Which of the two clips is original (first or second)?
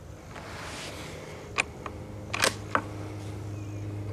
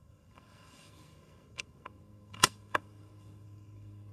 first